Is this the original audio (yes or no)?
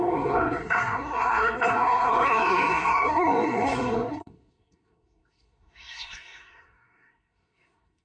no